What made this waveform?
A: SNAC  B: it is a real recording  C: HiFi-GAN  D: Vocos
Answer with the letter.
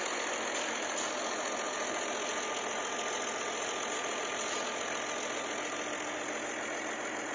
B